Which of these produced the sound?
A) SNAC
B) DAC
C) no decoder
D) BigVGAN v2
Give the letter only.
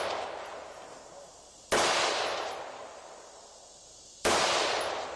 C